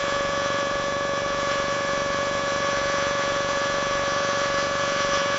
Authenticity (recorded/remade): remade